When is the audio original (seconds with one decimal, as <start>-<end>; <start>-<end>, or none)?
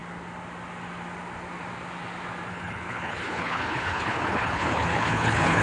0.0-2.5